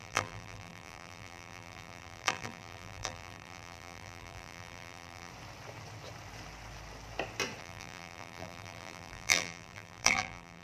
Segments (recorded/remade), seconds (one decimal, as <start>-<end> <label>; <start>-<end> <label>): 0.0-5.3 remade; 5.3-7.6 recorded; 7.6-10.6 remade